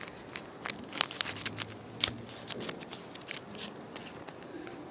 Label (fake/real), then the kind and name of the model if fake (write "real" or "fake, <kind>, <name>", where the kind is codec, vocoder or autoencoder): real